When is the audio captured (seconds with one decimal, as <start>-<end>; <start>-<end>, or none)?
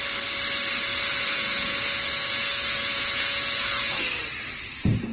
0.0-0.9; 4.0-5.1